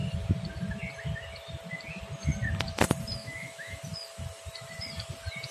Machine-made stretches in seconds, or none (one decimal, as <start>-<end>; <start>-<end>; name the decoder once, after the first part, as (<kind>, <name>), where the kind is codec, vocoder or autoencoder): 3.2-3.8 (autoencoder, DAC-VAE)